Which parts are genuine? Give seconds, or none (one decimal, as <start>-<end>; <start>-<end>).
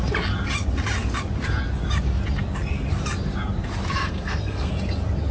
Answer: 0.0-4.0; 4.7-5.3